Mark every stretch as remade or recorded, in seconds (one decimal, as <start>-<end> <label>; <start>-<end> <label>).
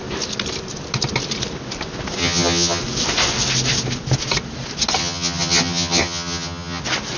0.0-2.2 recorded; 2.2-2.8 remade; 2.8-5.0 recorded; 5.0-6.8 remade; 6.8-7.2 recorded